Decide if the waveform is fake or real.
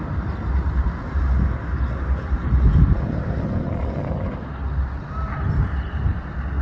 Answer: real